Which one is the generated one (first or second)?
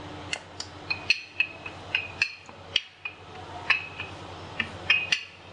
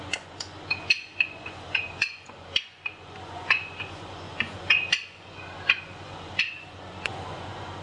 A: second